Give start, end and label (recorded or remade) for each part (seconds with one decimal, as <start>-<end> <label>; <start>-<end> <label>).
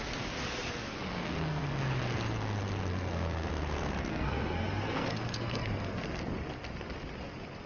0.0-1.1 recorded; 1.1-1.6 remade; 1.6-2.9 recorded; 2.9-3.5 remade; 3.5-4.1 recorded; 4.1-6.2 remade; 6.2-7.7 recorded